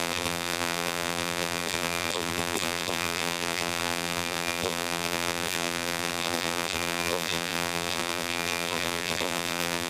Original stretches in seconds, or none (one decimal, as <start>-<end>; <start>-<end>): none